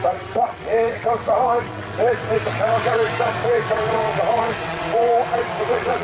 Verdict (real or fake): fake